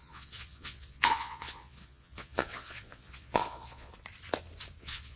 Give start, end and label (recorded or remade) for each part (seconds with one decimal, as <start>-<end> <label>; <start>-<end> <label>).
0.0-3.9 remade; 3.9-4.8 recorded; 4.8-5.2 remade